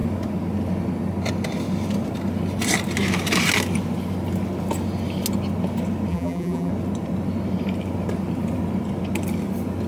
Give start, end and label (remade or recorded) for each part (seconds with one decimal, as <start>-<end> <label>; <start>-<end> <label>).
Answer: 0.0-6.1 recorded; 6.1-6.7 remade; 6.7-9.9 recorded